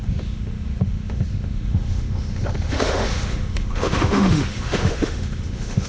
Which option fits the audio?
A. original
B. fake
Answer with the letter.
B